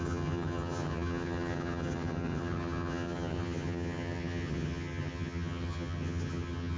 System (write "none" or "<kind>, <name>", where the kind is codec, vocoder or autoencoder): vocoder, HiFi-GAN